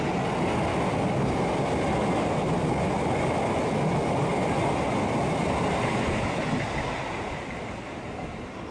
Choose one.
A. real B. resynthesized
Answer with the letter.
A